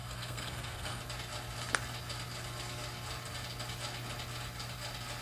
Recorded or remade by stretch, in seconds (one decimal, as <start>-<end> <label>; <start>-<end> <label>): 0.0-1.0 remade; 1.0-5.2 recorded